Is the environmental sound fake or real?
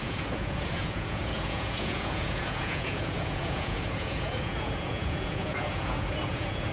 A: fake